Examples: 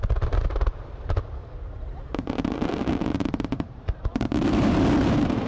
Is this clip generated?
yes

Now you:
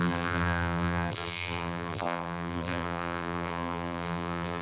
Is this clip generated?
yes